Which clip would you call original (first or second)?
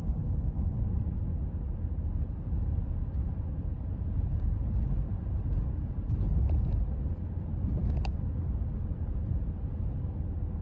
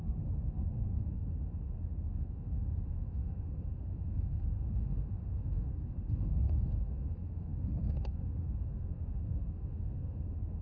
first